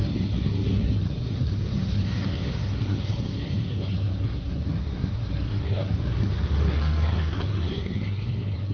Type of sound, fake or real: fake